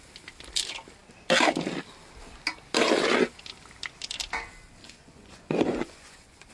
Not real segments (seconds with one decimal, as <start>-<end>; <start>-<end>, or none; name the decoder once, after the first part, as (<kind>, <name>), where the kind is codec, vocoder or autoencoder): 4.8-6.5 (vocoder, Vocos)